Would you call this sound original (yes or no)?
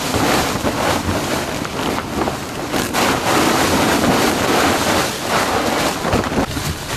no